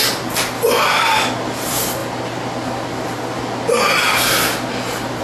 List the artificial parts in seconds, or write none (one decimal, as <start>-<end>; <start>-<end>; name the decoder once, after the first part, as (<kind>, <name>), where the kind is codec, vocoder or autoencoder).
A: none